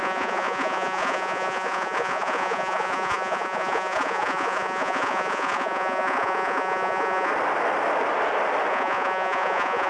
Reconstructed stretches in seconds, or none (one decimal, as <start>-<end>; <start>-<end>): 0.0-7.3; 8.7-9.9